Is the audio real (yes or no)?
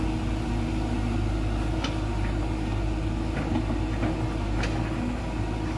yes